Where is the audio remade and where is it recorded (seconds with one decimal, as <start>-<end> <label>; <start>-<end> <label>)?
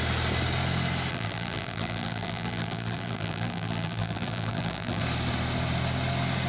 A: 0.0-1.1 recorded; 1.1-5.0 remade; 5.0-6.5 recorded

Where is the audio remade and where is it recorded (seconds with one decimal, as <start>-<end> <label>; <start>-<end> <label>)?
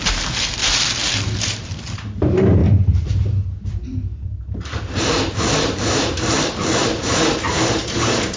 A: 0.0-0.6 remade; 0.6-1.1 recorded; 1.1-8.4 remade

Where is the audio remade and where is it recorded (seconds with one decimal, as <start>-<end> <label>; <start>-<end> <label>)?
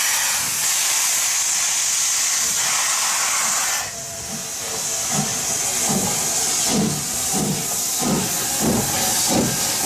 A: 0.0-9.9 recorded